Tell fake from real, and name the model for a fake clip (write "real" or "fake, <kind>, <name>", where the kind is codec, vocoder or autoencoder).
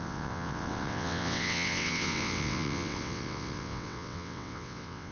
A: fake, vocoder, WaveNeXt